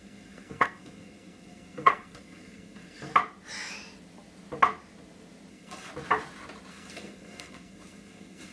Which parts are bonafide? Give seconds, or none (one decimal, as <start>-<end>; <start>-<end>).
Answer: 3.1-5.5; 5.9-6.7